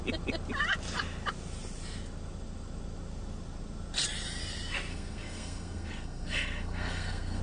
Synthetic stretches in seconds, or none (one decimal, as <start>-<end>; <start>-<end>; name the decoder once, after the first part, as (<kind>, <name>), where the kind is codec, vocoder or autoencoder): 4.9-7.4 (codec, SNAC)